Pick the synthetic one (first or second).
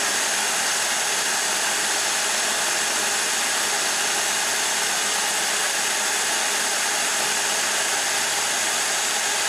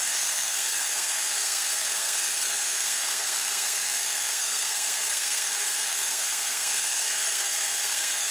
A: second